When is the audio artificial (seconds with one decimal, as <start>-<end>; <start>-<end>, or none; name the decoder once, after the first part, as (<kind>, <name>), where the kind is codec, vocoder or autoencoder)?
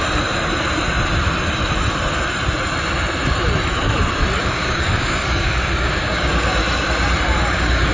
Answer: 4.4-6.6 (codec, DAC); 7.4-7.9